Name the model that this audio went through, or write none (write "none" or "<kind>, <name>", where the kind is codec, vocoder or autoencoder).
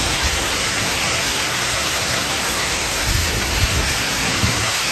codec, SNAC